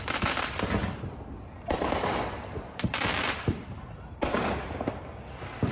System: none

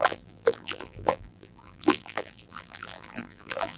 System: vocoder, BigVGAN v2